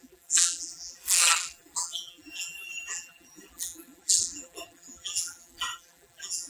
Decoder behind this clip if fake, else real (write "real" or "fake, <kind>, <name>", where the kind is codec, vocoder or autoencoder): fake, vocoder, BigVGAN v2